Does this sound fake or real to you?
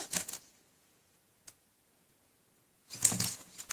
fake